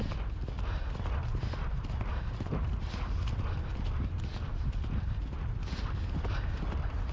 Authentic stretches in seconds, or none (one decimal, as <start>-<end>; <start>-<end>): 0.0-7.1